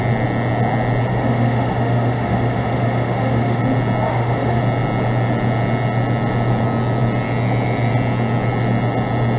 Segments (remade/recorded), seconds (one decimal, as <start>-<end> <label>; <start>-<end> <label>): 0.0-1.1 recorded; 1.1-3.6 remade; 3.6-4.1 recorded; 4.1-4.6 remade; 4.6-9.4 recorded